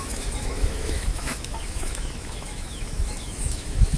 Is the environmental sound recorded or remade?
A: remade